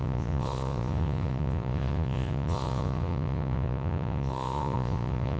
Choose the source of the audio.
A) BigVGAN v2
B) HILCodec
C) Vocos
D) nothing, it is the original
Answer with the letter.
C